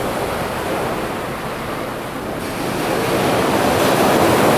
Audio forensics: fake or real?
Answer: real